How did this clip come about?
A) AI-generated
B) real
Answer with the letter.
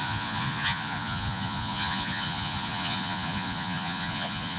A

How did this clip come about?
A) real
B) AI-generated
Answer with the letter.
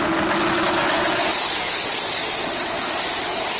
A